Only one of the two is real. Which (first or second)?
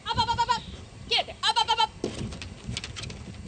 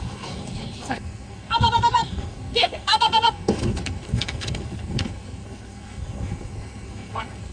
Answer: first